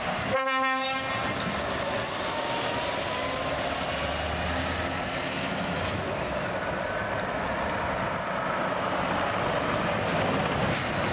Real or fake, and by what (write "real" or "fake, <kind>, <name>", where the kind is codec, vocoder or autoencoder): real